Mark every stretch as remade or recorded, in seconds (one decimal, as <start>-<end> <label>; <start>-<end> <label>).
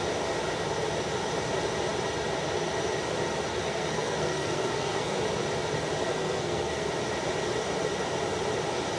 0.0-3.5 recorded; 3.5-5.2 remade; 5.2-6.0 recorded; 6.0-6.9 remade; 6.9-9.0 recorded